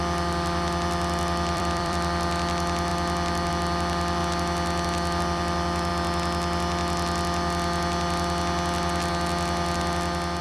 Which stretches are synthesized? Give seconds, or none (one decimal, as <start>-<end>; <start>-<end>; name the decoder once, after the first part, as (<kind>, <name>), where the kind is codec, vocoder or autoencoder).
0.0-4.2 (vocoder, BigVGAN v2); 5.2-5.9